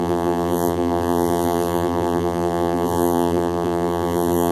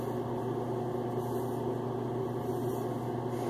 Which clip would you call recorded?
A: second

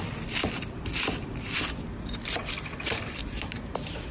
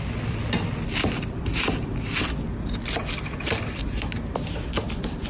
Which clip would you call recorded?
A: second